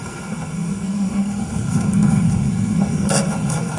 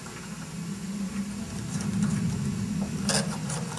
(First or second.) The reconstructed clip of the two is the first